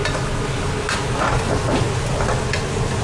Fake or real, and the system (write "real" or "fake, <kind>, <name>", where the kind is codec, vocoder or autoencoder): real